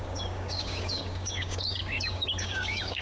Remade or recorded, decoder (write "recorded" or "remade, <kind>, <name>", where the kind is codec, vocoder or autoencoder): remade, codec, DAC